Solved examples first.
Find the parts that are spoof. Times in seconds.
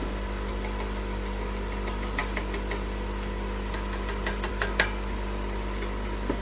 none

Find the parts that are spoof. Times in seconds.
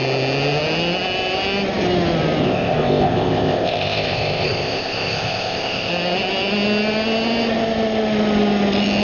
2.4-5.9 (codec, ZipCodec)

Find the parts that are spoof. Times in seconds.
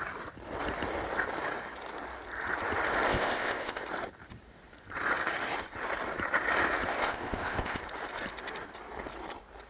3.1-3.8 (codec, ZipCodec); 6.9-7.8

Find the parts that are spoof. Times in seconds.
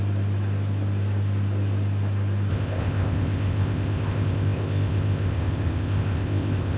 2.5-6.8 (codec, ZipCodec)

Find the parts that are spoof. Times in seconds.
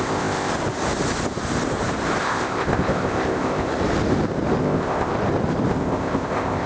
0.0-0.5 (codec, ZipCodec); 2.2-3.7; 4.6-5.1; 5.7-6.7